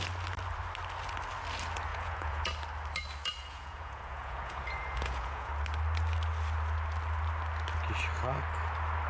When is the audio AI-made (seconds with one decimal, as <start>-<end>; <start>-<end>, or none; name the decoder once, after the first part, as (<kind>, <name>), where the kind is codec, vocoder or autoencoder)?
1.9-2.4 (vocoder, Vocos); 3.4-5.5